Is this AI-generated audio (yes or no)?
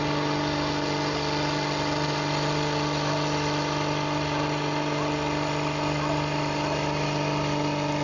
no